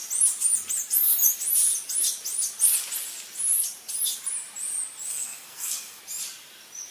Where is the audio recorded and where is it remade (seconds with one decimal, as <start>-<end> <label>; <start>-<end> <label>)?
0.0-5.1 recorded; 5.1-6.0 remade; 6.0-6.9 recorded

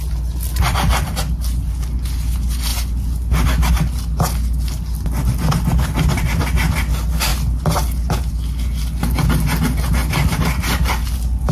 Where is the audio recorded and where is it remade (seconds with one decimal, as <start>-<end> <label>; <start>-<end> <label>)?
0.0-11.5 recorded

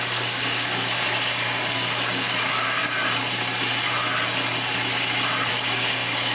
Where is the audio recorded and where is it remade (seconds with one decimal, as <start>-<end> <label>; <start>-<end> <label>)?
0.0-2.8 remade; 2.8-5.5 recorded; 5.5-6.3 remade

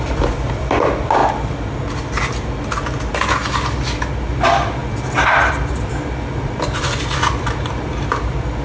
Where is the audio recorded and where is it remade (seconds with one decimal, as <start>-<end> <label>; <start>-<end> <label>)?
0.0-1.2 remade; 1.2-4.3 recorded; 4.3-4.8 remade; 4.8-5.4 recorded; 5.4-8.6 remade

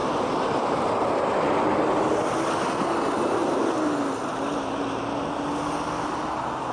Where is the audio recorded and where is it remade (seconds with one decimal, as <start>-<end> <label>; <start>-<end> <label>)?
0.0-6.7 recorded

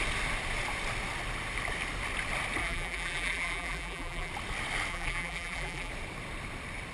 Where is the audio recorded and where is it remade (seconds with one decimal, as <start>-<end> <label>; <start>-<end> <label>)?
0.0-2.6 recorded; 2.6-4.3 remade; 4.3-4.9 recorded; 4.9-5.9 remade; 5.9-6.9 recorded

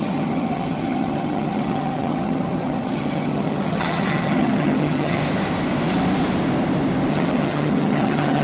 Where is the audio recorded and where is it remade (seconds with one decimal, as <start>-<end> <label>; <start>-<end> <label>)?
0.0-5.2 remade; 5.2-7.1 recorded; 7.1-8.4 remade

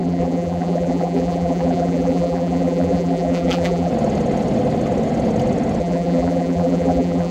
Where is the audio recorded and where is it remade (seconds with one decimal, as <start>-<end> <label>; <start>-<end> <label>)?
0.0-3.9 remade; 3.9-5.8 recorded; 5.8-7.3 remade